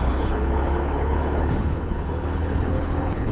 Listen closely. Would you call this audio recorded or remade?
remade